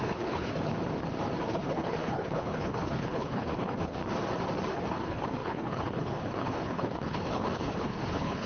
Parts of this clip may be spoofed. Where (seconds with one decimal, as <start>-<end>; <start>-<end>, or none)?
0.0-0.7; 1.5-4.0; 4.7-8.5